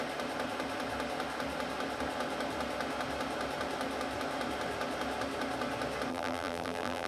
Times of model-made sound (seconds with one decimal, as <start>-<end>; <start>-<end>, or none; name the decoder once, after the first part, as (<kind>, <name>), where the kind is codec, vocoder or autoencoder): 6.1-7.1 (vocoder, BigVGAN v2)